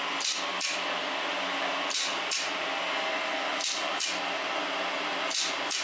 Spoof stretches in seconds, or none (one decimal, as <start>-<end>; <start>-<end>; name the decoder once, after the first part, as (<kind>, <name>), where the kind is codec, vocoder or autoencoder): none

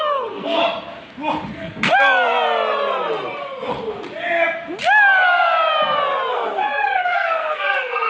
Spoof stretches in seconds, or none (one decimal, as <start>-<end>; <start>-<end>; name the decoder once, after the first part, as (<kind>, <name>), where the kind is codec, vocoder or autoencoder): 0.0-0.6 (codec, SNAC); 1.5-1.9; 6.3-8.1

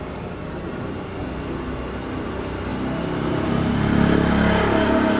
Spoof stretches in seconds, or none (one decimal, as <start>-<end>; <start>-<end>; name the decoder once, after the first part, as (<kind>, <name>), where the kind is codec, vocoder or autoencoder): none

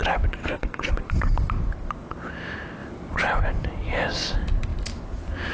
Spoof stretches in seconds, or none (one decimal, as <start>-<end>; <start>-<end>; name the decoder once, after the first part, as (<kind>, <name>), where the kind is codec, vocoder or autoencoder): 0.4-0.9 (codec, SNAC)

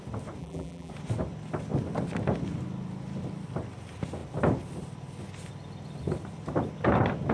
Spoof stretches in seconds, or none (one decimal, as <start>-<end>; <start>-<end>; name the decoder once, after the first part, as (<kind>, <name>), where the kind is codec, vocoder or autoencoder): 0.4-0.9 (vocoder, BigVGAN v2)

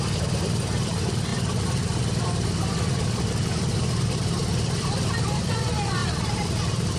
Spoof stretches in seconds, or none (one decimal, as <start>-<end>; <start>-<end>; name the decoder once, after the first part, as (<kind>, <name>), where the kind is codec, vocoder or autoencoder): 1.3-5.5 (vocoder, BigVGAN v2)

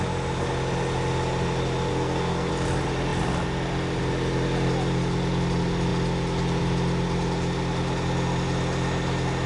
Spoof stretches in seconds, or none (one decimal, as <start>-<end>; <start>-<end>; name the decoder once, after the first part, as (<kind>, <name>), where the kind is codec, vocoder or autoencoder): 1.9-2.5 (codec, SNAC)